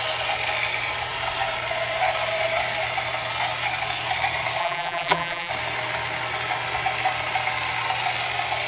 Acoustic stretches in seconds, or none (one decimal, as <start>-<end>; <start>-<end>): 0.0-4.6; 5.5-8.7